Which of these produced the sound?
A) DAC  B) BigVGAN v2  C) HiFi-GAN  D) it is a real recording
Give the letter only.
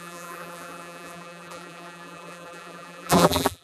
B